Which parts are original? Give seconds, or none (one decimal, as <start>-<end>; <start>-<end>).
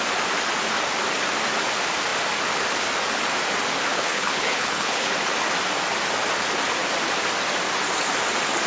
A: 0.0-3.9; 5.1-8.7